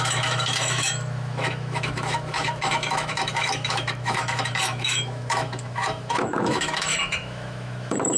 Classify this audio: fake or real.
fake